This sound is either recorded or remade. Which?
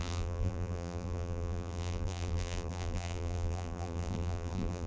remade